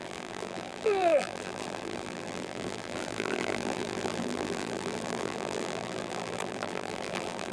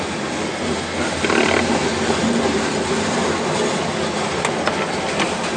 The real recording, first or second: second